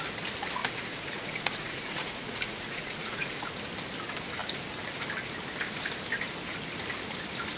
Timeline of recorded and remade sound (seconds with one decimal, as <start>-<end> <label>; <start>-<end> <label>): 0.0-0.6 recorded; 0.6-3.5 remade; 3.5-7.6 recorded